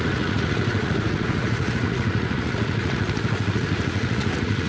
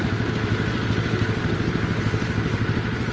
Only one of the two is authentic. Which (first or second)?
second